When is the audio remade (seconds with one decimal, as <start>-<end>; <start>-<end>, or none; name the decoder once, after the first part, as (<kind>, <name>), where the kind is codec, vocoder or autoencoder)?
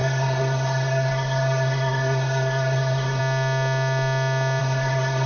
0.0-3.2 (codec, SNAC); 4.6-5.3